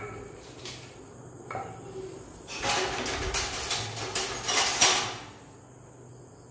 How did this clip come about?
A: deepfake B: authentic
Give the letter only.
B